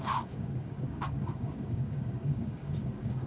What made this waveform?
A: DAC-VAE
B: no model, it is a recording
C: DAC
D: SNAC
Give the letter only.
C